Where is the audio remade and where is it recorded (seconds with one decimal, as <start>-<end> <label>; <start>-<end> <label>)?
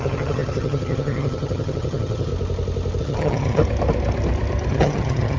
0.0-2.3 remade; 2.3-3.0 recorded; 3.0-3.6 remade; 3.6-4.7 recorded; 4.7-5.4 remade